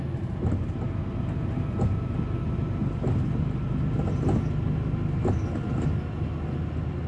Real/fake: real